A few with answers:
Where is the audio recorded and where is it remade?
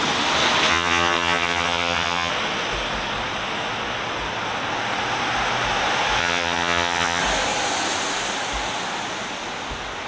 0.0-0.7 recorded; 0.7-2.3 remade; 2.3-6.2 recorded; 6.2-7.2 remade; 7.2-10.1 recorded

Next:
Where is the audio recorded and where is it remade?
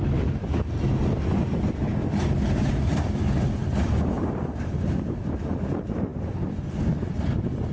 0.0-3.6 recorded; 3.6-5.1 remade; 5.1-7.7 recorded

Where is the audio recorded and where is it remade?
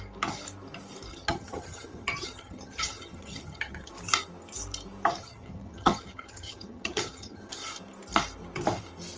0.0-1.1 recorded; 1.1-3.9 remade; 3.9-5.2 recorded; 5.2-7.5 remade; 7.5-9.2 recorded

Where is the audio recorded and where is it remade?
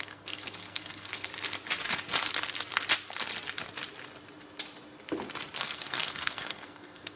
0.0-1.3 remade; 1.3-5.6 recorded; 5.6-7.2 remade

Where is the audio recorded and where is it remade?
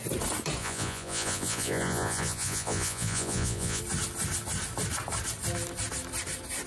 0.0-0.6 recorded; 0.6-3.8 remade; 3.8-6.7 recorded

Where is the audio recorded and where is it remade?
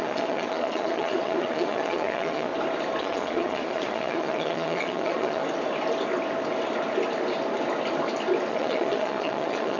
0.0-2.5 remade; 2.5-3.0 recorded; 3.0-5.4 remade; 5.4-8.5 recorded; 8.5-9.8 remade